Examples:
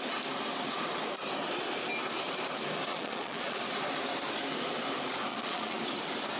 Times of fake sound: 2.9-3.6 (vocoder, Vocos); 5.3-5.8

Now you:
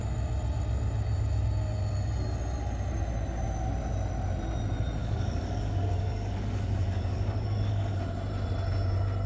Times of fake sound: 5.0-8.0 (codec, DAC)

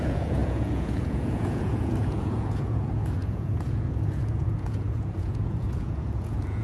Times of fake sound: 0.0-6.6 (vocoder, Vocos)

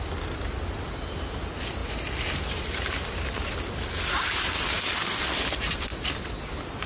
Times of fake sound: none

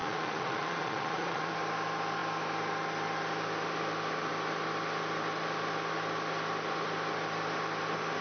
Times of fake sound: 0.0-1.5 (vocoder, Vocos)

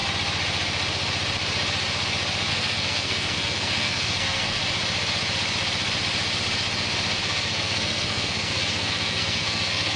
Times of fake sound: 2.5-4.6 (codec, SNAC); 7.2-10.0

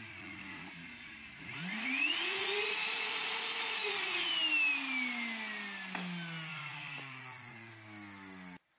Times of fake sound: 0.0-4.3 (vocoder, Vocos); 6.5-7.7

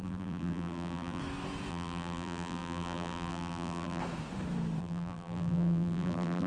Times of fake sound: 0.0-1.2 (vocoder, BigVGAN v2); 1.7-4.0; 4.8-6.5